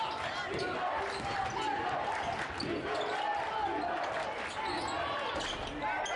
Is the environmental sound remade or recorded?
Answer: recorded